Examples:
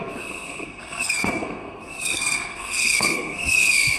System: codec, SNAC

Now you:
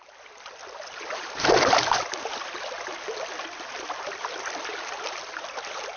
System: none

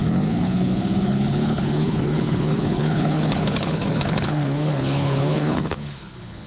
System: codec, HILCodec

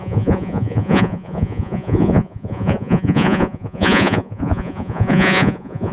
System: vocoder, Vocos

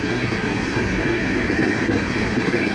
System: codec, SNAC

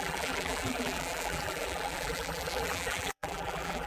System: vocoder, BigVGAN v2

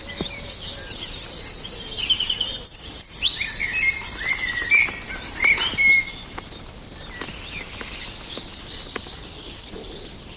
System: none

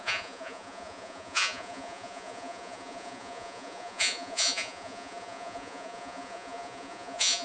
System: vocoder, Vocos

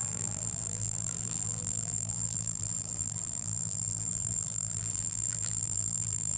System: vocoder, BigVGAN v2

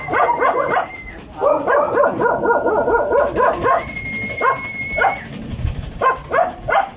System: none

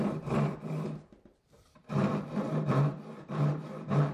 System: vocoder, BigVGAN v2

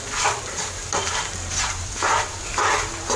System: vocoder, BigVGAN v2